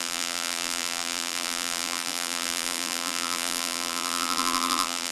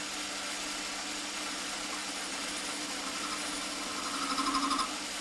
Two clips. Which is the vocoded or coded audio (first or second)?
first